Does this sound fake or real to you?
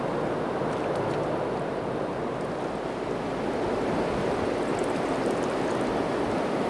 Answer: real